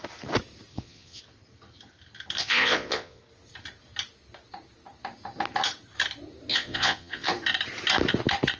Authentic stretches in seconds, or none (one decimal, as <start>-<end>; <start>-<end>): 0.0-0.7; 1.2-2.4; 3.2-6.5; 7.3-8.6